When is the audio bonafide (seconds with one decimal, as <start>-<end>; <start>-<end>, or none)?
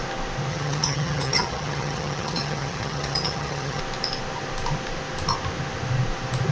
0.0-0.5; 3.8-6.5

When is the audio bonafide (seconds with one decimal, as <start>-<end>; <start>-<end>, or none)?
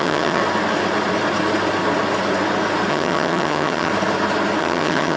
0.4-2.9; 3.9-4.6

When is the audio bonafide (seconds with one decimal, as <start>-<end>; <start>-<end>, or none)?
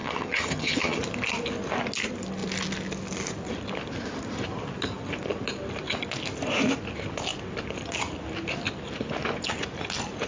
1.0-10.3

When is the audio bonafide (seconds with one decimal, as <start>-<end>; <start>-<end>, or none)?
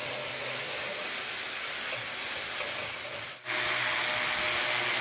0.0-5.0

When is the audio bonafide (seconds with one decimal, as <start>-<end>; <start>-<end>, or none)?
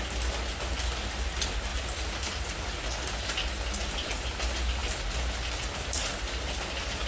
0.0-7.1